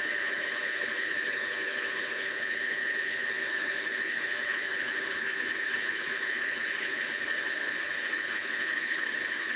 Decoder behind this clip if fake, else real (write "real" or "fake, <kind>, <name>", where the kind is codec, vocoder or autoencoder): fake, codec, HILCodec